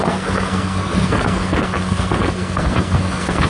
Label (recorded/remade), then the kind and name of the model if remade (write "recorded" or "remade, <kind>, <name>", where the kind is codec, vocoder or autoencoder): remade, codec, SNAC